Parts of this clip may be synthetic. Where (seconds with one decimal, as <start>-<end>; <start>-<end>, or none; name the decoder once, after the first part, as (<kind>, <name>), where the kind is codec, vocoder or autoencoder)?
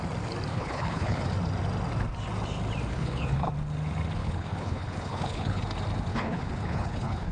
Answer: 0.5-1.2 (codec, HILCodec); 2.9-3.5; 4.2-5.6; 6.1-7.3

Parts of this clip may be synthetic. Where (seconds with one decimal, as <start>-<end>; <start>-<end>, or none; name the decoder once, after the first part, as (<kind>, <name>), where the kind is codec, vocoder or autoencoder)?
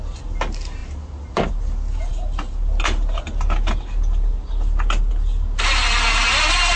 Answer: none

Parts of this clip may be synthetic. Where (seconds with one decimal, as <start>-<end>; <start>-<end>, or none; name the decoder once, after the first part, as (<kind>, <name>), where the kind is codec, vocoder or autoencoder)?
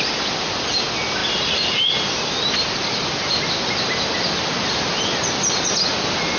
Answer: none